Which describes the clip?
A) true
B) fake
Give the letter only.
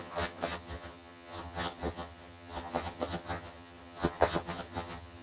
B